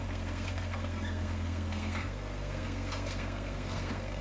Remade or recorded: remade